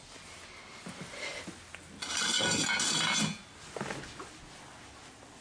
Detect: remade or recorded recorded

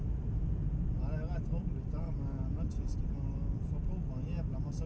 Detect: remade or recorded recorded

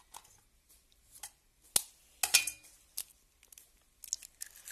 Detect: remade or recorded recorded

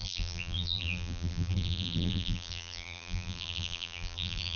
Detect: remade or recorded remade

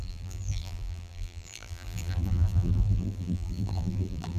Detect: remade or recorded remade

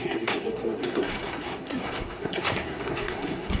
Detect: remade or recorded remade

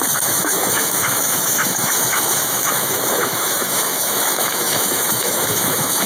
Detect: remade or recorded remade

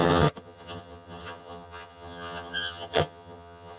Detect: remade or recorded remade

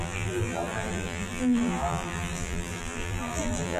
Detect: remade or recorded remade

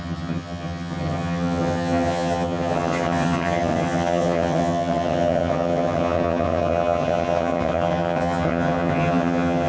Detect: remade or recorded remade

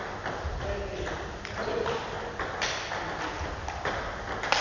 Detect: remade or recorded recorded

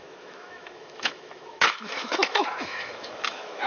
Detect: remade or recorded remade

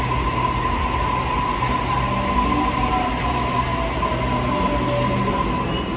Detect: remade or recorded recorded